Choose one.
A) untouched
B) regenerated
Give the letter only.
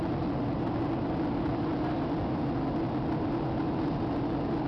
A